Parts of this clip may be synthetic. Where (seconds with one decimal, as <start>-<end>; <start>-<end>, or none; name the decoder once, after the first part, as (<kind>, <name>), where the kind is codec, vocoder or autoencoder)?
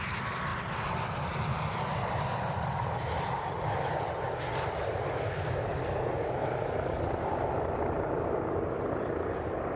none